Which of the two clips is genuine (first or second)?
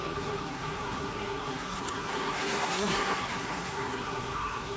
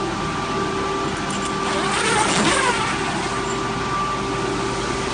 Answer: second